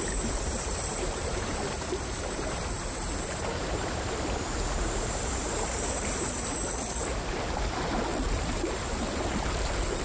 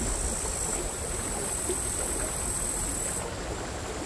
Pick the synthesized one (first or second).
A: first